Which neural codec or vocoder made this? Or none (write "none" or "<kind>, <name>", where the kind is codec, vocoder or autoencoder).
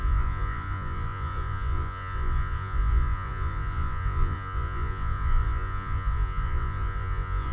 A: vocoder, Vocos